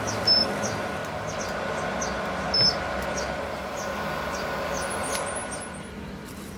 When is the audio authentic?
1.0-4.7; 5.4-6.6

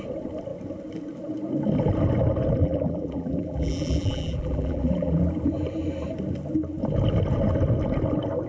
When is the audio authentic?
0.0-2.6; 5.2-8.5